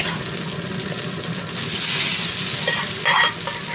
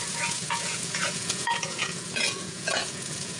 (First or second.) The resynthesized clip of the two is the second